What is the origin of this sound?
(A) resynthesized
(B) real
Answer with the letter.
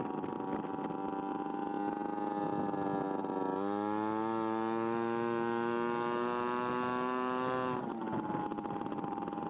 B